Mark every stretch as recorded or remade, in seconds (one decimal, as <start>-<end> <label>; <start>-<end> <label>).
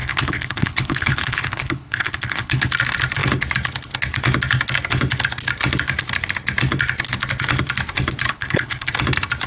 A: 0.0-2.7 remade; 2.7-8.3 recorded; 8.3-8.9 remade; 8.9-9.5 recorded